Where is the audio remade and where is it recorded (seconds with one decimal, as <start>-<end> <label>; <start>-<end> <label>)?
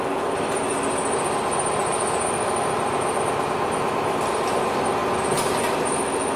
0.0-6.4 recorded